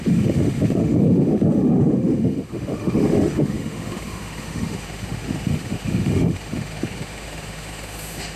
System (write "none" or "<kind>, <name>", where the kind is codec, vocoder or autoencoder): autoencoder, DAC-VAE